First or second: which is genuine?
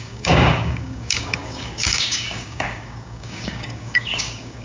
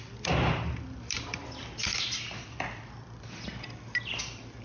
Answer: second